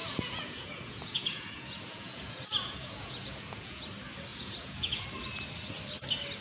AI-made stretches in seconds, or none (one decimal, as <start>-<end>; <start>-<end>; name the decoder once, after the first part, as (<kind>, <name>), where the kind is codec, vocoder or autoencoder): 0.0-3.8 (vocoder, Vocos); 4.3-5.0